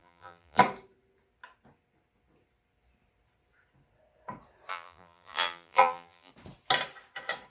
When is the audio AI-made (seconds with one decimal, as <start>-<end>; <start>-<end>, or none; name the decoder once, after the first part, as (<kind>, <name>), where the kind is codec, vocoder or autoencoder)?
0.0-0.6 (vocoder, BigVGAN v2); 4.7-6.3